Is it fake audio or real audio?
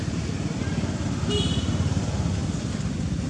real